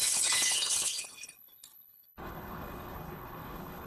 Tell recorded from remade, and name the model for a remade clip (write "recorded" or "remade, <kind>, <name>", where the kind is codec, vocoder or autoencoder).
remade, codec, HILCodec